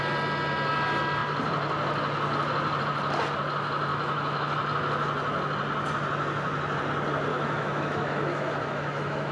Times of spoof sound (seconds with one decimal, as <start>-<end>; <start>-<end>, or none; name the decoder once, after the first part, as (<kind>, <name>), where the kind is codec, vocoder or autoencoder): 3.9-4.5 (autoencoder, DAC-VAE); 7.3-9.3